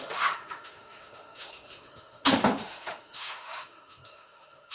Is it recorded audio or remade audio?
remade